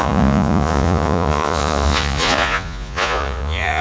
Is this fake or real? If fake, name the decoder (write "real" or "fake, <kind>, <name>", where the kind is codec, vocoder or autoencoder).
fake, vocoder, Vocos